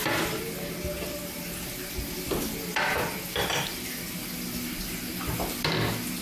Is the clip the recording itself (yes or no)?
yes